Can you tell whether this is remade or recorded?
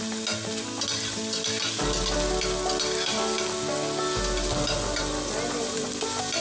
recorded